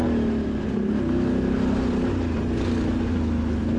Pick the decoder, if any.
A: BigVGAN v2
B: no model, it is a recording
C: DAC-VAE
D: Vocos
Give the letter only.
B